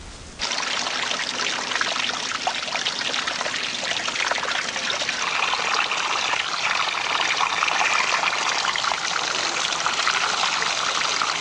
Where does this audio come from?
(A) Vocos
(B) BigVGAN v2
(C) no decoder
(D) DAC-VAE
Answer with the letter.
C